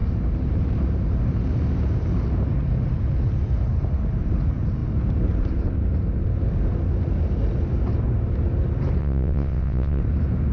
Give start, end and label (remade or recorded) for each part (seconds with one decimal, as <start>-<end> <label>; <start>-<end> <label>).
0.0-9.0 recorded; 9.0-10.0 remade; 10.0-10.5 recorded